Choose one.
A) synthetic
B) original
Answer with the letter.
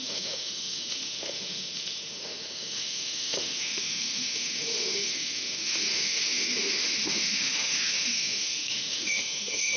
A